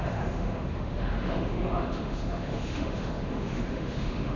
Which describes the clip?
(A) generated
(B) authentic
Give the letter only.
A